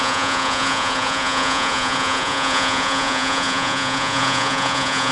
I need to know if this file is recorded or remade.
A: remade